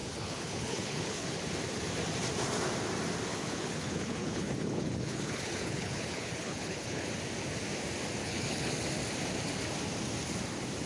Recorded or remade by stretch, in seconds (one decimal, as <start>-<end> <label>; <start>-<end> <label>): 0.0-1.4 remade; 1.4-3.3 recorded; 3.3-7.1 remade; 7.1-8.2 recorded; 8.2-8.7 remade; 8.7-10.9 recorded